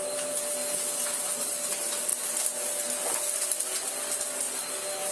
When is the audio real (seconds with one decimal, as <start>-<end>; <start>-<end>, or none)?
0.0-5.1